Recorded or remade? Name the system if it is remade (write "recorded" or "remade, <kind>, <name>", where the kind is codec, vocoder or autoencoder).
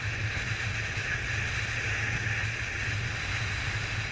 recorded